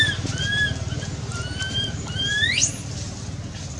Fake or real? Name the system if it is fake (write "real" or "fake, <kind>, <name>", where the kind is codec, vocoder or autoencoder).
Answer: real